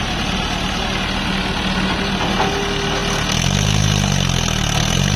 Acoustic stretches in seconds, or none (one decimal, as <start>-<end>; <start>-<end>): 0.0-5.2